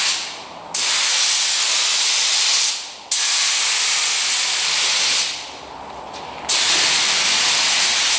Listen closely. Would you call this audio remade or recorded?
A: recorded